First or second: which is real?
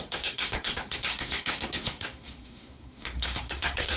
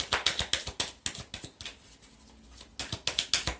second